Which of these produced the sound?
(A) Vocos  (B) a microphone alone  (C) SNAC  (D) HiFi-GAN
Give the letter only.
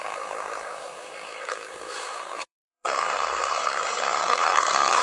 C